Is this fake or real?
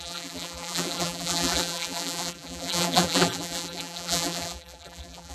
fake